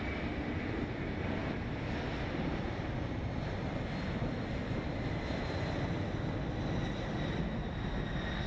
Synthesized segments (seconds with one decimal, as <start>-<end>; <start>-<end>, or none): none